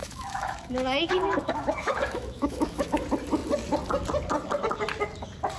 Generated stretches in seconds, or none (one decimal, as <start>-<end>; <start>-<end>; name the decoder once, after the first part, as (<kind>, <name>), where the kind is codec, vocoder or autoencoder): 0.0-3.0 (autoencoder, DAC-VAE)